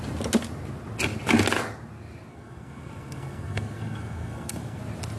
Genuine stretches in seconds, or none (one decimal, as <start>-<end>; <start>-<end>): 0.0-2.3; 4.8-5.2